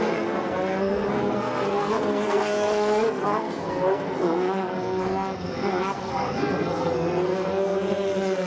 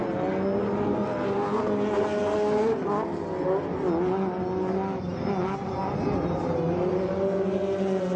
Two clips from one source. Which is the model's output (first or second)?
first